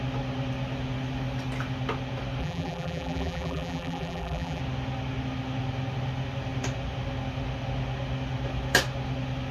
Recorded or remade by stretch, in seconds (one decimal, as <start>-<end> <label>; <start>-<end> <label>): 0.0-2.4 recorded; 2.4-4.6 remade; 4.6-9.5 recorded